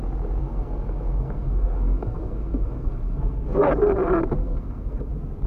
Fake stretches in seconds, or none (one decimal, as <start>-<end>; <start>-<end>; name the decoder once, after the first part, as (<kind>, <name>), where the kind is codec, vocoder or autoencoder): 0.4-3.7 (codec, SNAC); 4.4-5.1